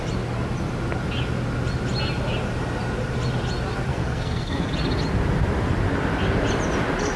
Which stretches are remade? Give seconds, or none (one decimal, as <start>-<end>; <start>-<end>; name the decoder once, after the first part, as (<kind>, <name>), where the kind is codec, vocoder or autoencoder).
3.9-4.7 (codec, SNAC)